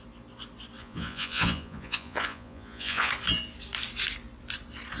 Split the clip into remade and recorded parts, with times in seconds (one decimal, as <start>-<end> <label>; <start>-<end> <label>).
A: 0.0-0.8 recorded; 0.8-3.1 remade; 3.1-5.0 recorded